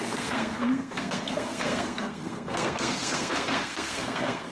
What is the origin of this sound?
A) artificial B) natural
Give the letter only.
A